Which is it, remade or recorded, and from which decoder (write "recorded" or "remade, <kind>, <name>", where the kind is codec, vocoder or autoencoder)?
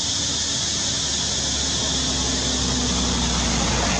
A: recorded